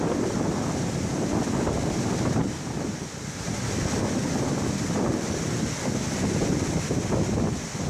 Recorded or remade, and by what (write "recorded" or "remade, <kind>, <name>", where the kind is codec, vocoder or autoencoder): recorded